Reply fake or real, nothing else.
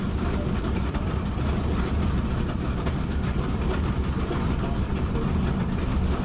fake